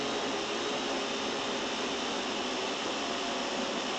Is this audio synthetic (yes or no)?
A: no